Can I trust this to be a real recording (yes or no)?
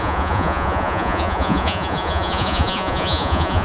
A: no